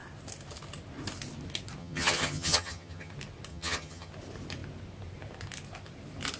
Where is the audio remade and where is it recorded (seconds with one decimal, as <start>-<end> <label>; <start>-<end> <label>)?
0.0-1.8 recorded; 1.8-3.1 remade; 3.1-3.5 recorded; 3.5-4.1 remade; 4.1-6.4 recorded